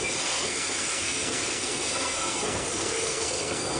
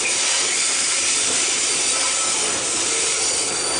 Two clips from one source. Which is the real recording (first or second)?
second